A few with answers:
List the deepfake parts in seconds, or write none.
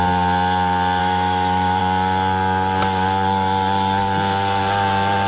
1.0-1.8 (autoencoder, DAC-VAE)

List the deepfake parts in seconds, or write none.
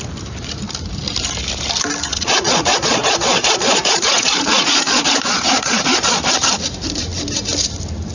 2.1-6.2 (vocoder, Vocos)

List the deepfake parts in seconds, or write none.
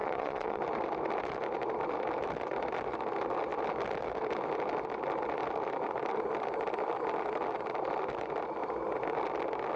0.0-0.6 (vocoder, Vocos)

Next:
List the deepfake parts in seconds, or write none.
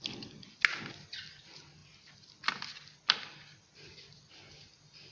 none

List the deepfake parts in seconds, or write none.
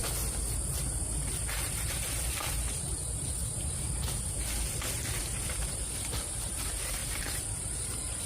1.4-3.4 (vocoder, BigVGAN v2); 6.1-8.3